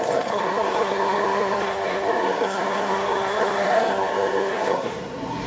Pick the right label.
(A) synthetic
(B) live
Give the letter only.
A